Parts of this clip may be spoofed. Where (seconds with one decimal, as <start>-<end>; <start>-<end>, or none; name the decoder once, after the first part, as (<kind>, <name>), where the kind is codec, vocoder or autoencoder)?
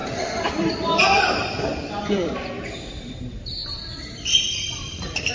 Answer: 0.0-3.2 (vocoder, BigVGAN v2); 3.6-5.3